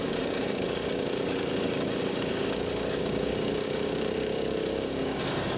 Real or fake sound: fake